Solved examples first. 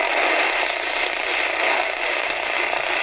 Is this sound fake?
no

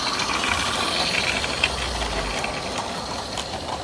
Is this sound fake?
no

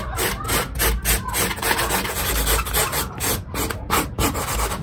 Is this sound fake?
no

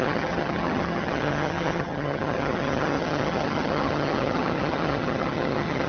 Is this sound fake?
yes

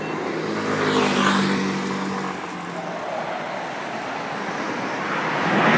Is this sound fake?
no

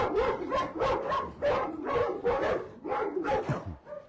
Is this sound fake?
yes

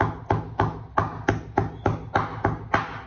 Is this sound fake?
no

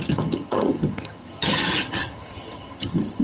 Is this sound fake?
yes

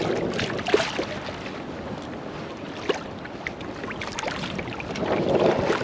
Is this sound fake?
no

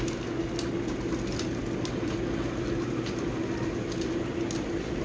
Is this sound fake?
no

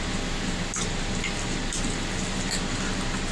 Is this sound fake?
no